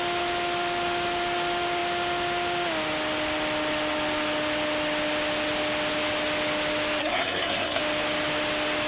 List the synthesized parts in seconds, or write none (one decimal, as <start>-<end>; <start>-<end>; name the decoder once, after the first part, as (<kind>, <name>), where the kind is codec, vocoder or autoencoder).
7.0-7.8 (codec, SNAC)